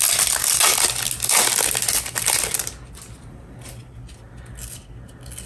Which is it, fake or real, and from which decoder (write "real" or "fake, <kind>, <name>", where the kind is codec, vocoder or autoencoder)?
real